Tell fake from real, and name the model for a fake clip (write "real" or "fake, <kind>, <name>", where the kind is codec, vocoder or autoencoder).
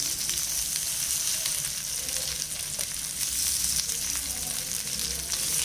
real